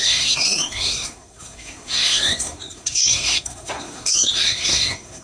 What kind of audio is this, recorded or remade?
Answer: remade